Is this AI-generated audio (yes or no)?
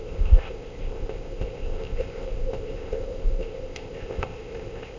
yes